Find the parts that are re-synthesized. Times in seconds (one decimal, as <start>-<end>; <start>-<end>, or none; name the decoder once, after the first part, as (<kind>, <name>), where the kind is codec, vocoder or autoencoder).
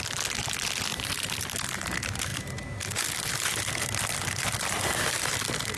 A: 0.9-1.5 (vocoder, BigVGAN v2)